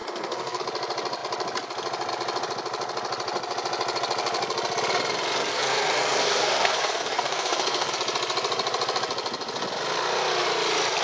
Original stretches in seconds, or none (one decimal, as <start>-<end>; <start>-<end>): 0.6-5.5; 7.9-11.0